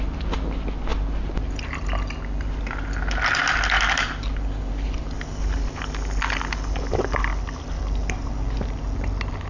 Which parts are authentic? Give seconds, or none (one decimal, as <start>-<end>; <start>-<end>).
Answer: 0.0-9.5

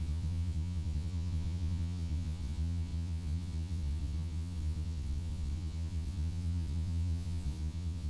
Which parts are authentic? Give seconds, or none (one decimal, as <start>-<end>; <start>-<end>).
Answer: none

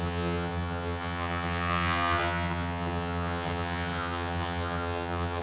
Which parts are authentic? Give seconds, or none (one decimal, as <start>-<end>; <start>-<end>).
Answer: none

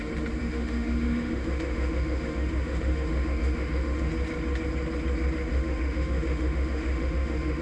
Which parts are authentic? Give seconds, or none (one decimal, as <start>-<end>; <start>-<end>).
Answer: 0.0-0.4; 4.1-5.5

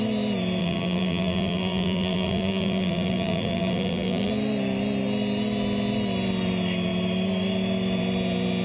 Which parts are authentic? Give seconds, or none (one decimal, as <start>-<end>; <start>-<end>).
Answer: 0.0-0.6; 4.3-8.6

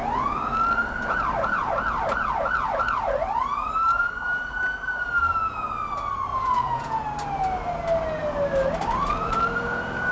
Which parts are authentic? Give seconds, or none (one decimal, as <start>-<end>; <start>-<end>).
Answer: 0.0-6.3; 7.0-10.1

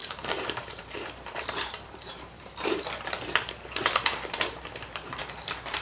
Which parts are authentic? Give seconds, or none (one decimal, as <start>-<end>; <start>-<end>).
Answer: 2.8-5.8